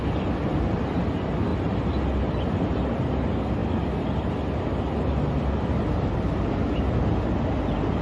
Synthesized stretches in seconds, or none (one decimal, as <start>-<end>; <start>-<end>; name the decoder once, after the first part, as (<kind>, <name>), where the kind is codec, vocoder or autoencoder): none